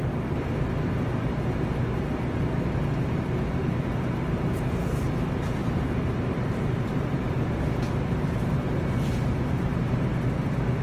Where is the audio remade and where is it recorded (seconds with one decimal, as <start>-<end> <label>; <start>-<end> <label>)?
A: 0.0-5.6 recorded; 5.6-9.8 remade; 9.8-10.8 recorded